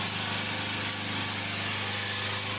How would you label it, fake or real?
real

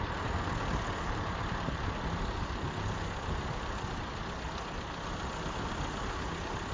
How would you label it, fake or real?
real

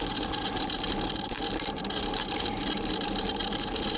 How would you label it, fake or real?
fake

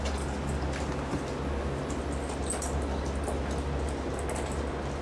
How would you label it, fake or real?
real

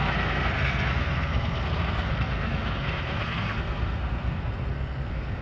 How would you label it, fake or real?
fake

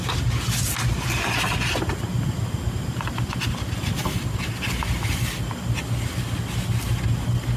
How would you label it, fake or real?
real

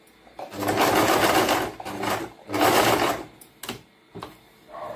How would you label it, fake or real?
real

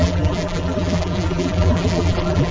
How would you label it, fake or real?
fake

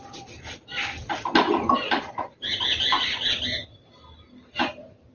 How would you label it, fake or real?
real